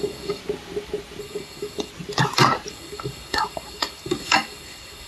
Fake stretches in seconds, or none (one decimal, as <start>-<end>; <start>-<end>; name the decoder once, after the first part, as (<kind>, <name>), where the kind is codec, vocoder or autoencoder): 0.0-0.4 (codec, DAC); 1.2-1.9; 2.7-5.1